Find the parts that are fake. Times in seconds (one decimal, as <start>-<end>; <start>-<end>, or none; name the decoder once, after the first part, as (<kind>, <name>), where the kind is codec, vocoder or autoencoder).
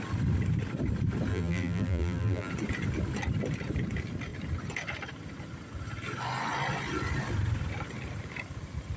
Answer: 1.3-2.5 (vocoder, BigVGAN v2)